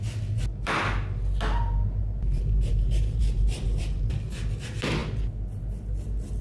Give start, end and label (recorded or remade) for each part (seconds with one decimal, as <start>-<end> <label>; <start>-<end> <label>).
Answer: 0.0-2.0 recorded; 2.0-4.1 remade; 4.1-6.4 recorded

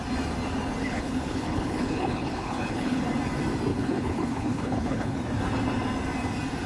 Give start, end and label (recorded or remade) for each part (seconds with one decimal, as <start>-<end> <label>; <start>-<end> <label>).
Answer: 0.0-0.8 recorded; 0.8-3.0 remade; 3.0-3.7 recorded; 3.7-5.2 remade; 5.2-6.7 recorded

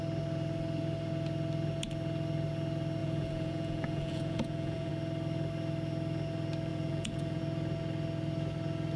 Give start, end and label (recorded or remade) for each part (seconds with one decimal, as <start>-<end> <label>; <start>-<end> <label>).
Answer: 0.0-3.0 recorded; 3.0-4.9 remade; 4.9-6.7 recorded; 6.7-7.4 remade; 7.4-9.0 recorded

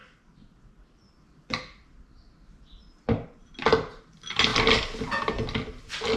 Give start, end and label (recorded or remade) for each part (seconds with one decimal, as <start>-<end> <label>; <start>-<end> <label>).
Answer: 0.0-6.2 recorded

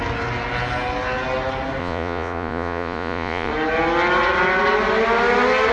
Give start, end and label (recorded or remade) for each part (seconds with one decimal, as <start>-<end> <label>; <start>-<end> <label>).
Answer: 0.0-1.8 recorded; 1.8-3.5 remade; 3.5-5.7 recorded